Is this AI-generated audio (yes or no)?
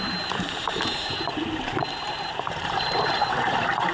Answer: yes